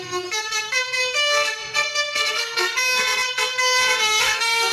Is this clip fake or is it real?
fake